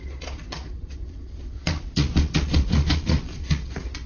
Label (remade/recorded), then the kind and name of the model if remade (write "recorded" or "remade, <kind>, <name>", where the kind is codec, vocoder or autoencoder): remade, vocoder, Vocos